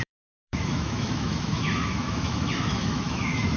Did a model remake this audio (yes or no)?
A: yes